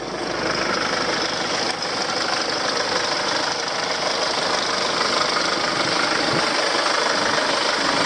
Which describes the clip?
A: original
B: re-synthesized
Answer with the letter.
A